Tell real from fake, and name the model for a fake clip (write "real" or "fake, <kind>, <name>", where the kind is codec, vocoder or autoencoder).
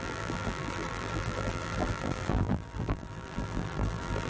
fake, vocoder, BigVGAN v2